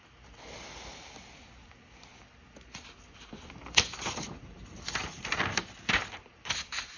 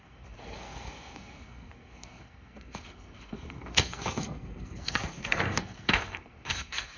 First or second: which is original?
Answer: first